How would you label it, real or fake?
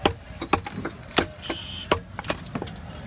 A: real